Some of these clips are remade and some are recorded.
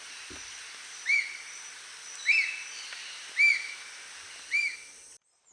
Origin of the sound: recorded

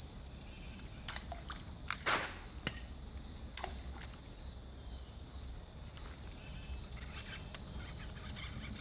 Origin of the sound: recorded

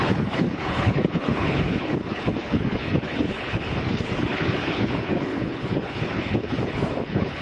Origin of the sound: remade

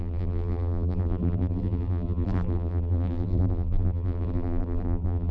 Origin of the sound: remade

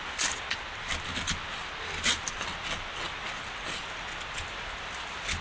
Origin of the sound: recorded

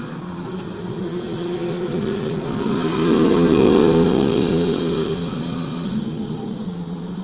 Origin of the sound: remade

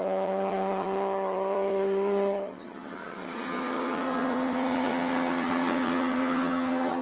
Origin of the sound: remade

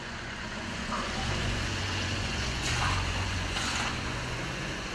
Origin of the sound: remade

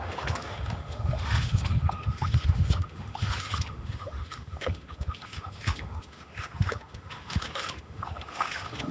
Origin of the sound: remade